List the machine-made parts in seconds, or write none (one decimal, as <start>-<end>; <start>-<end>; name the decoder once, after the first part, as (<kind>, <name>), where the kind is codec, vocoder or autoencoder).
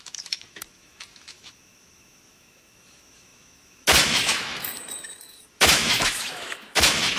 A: 0.0-7.2 (autoencoder, DAC-VAE)